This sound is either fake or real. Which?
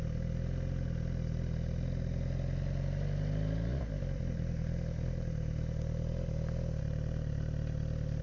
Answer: real